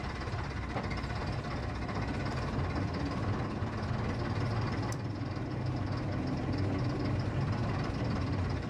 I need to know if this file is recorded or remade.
recorded